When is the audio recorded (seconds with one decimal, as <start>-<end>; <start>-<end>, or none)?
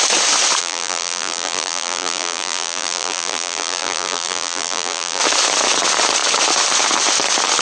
0.0-0.6; 5.2-7.6